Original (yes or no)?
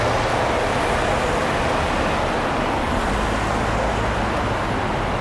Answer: yes